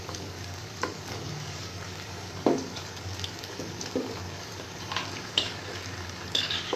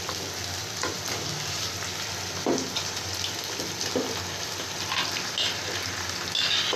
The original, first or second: second